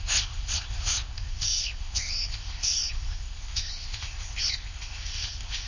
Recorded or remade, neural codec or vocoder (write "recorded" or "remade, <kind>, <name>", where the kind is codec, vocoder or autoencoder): remade, codec, ZipCodec